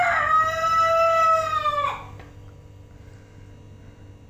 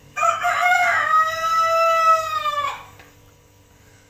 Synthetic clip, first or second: second